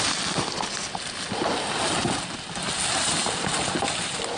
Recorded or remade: recorded